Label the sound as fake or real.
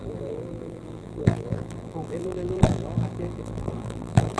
fake